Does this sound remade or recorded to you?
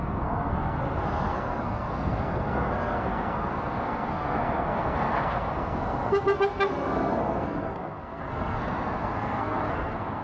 remade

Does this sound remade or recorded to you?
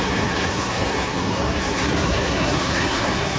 remade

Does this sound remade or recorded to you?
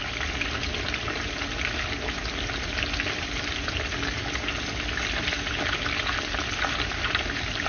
recorded